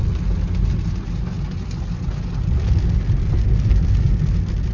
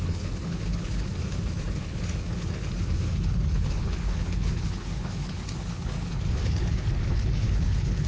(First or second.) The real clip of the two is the first